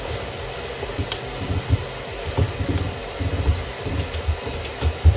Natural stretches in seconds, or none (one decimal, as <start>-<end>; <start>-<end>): 0.0-5.2